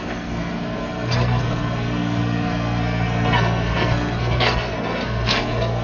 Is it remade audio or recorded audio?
remade